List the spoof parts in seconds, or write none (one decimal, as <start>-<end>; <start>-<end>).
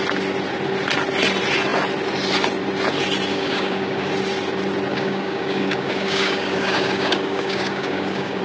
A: 3.3-4.1; 4.9-8.4